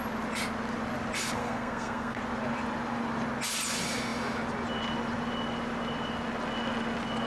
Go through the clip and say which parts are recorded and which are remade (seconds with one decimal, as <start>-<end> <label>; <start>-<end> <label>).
0.0-1.4 recorded; 1.4-2.2 remade; 2.2-7.3 recorded